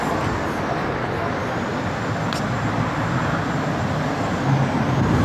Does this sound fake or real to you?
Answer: real